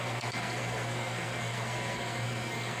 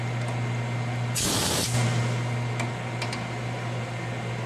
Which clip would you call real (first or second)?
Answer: second